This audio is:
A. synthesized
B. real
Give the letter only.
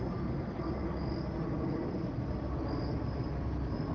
B